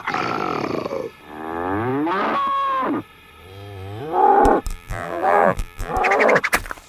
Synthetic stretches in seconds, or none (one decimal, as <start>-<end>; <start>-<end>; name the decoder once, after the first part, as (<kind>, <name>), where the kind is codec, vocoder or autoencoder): 4.7-5.9 (vocoder, BigVGAN v2)